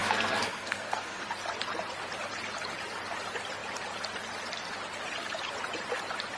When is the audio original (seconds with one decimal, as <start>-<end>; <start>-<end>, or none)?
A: 1.2-6.4